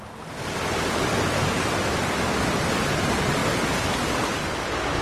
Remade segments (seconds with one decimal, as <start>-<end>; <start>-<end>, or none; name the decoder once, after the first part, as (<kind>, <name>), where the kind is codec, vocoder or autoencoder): none